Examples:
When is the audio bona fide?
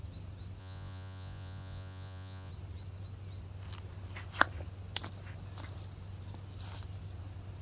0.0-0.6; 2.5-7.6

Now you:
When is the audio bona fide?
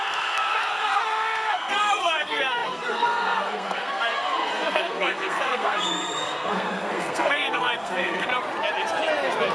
8.3-9.5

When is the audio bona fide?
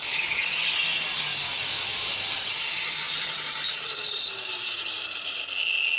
0.0-1.9; 5.5-6.0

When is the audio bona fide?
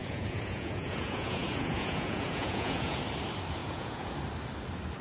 3.0-3.6; 4.1-5.0